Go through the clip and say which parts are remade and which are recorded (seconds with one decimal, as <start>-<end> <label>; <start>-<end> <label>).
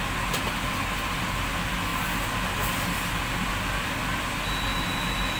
0.0-4.7 recorded; 4.7-5.4 remade